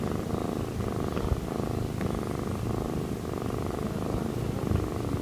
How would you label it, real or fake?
real